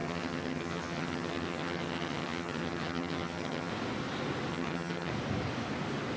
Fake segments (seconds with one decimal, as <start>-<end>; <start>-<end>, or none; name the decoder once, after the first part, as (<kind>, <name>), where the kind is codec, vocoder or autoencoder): 0.0-3.7 (vocoder, HiFi-GAN); 4.5-5.1